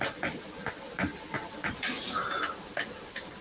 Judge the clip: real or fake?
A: real